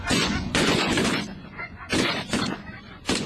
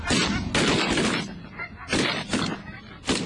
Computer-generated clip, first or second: first